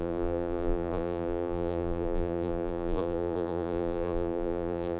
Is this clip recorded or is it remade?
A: remade